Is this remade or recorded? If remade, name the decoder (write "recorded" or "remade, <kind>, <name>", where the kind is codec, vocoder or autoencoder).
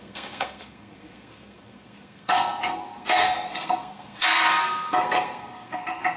remade, codec, SNAC